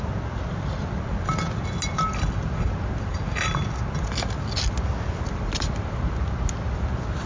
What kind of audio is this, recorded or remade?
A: recorded